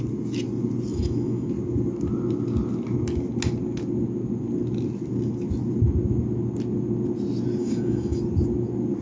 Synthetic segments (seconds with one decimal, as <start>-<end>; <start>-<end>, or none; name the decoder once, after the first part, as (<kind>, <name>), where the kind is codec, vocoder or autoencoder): 0.9-1.5 (autoencoder, DAC-VAE); 7.6-8.2